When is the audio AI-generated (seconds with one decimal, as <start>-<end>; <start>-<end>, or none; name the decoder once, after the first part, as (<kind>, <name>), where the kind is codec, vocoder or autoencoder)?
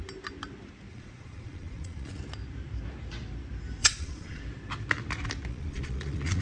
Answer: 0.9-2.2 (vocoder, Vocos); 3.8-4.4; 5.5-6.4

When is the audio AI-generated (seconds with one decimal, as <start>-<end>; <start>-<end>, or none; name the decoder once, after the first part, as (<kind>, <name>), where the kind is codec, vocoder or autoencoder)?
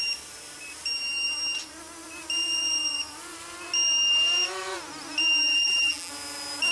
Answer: 5.4-6.1 (vocoder, BigVGAN v2)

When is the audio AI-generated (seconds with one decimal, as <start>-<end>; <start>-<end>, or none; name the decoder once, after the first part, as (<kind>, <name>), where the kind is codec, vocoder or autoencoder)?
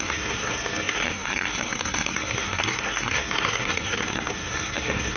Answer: 0.0-5.2 (codec, SNAC)